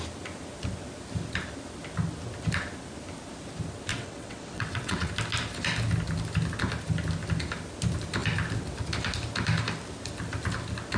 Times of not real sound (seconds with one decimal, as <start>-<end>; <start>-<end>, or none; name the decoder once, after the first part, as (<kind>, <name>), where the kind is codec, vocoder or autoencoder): 3.9-5.1 (vocoder, WaveNeXt)